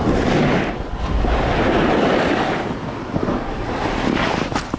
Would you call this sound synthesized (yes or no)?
no